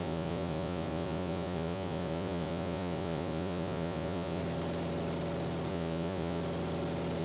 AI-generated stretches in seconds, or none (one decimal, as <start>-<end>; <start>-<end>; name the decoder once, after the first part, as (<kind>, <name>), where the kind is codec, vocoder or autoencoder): 0.0-4.4 (vocoder, Vocos); 5.7-6.4